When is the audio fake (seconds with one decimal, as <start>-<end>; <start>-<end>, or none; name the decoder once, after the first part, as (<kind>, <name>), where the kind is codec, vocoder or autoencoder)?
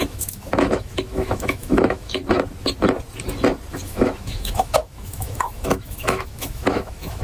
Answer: 0.0-2.2 (autoencoder, DAC-VAE); 3.7-7.2